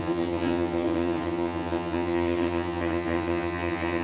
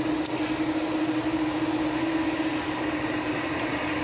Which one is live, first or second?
second